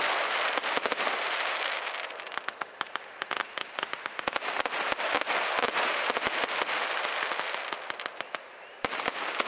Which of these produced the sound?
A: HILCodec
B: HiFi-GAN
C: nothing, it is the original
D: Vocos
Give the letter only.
C